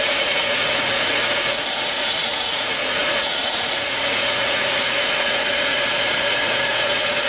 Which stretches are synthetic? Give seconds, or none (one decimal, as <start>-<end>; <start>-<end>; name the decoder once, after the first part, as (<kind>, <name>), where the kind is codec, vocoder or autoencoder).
0.0-7.3 (vocoder, Vocos)